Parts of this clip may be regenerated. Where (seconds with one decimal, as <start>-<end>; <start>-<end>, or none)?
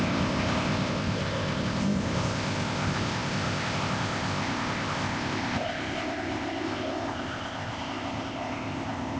0.0-9.2